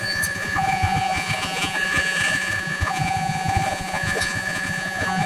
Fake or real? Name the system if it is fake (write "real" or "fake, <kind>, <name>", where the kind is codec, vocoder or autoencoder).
fake, vocoder, Vocos